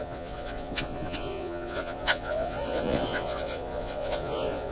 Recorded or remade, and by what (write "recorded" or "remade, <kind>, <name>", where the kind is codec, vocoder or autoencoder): remade, vocoder, Vocos